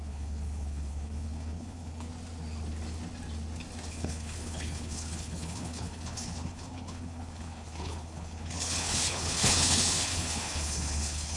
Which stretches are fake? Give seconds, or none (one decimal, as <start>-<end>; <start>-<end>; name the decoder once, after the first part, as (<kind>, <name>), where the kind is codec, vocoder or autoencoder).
0.0-2.1 (codec, HILCodec); 3.9-11.4